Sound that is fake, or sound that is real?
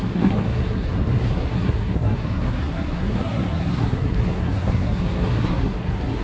fake